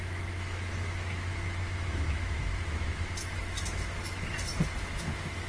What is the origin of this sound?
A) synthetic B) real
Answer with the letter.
A